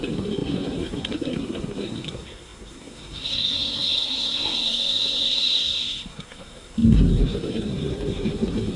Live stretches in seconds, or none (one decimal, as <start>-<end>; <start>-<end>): none